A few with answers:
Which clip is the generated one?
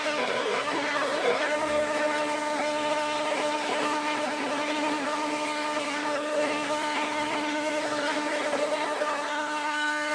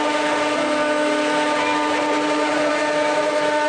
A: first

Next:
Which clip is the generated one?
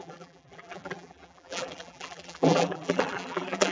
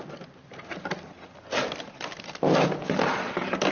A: first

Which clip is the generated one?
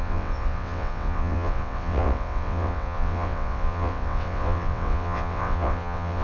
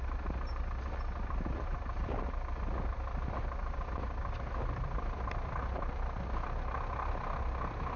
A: first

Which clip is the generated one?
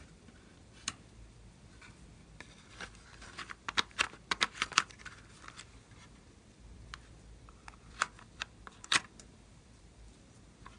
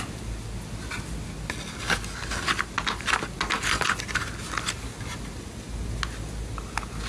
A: first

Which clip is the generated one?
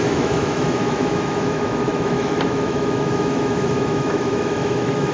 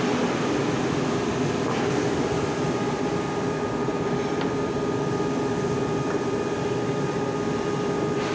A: first